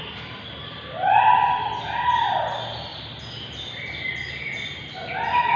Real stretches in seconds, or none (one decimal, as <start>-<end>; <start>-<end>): 0.0-5.6